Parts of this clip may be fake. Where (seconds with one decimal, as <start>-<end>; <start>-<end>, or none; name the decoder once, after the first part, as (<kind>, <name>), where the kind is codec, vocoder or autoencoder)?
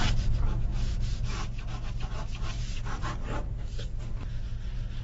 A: none